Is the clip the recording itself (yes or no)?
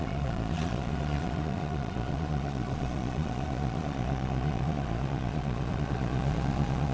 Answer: no